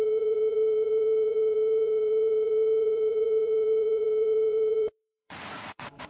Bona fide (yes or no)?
no